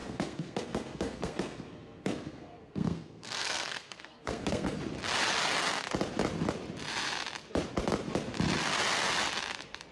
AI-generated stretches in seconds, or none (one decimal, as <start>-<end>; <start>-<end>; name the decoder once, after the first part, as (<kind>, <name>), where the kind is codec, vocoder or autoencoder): 0.0-4.8 (codec, SNAC)